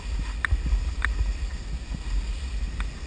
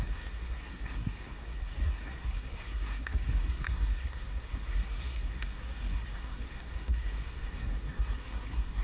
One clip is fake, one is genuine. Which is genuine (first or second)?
first